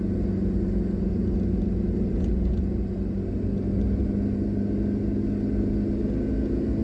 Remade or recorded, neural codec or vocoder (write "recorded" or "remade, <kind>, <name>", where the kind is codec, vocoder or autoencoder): recorded